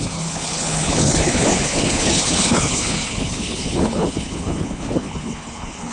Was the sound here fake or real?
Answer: fake